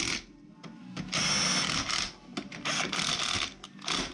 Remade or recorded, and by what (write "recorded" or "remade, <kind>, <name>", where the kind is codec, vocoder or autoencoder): recorded